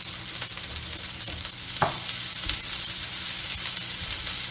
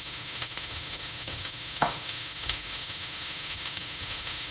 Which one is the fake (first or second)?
second